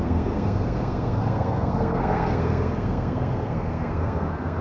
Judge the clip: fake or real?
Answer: fake